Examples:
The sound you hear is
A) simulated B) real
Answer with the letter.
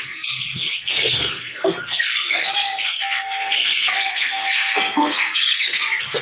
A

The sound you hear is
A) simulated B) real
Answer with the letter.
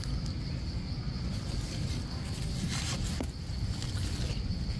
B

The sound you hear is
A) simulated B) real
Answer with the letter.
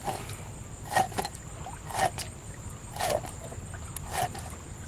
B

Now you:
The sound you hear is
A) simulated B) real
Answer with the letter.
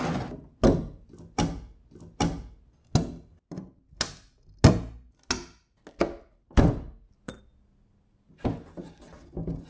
B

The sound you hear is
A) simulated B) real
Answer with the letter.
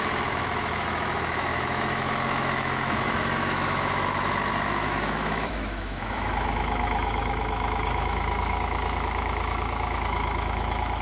A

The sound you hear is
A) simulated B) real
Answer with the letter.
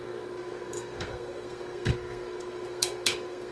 A